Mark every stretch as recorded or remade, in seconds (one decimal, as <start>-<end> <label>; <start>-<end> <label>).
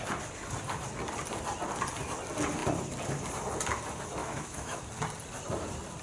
0.0-4.2 recorded; 4.2-4.8 remade; 4.8-6.0 recorded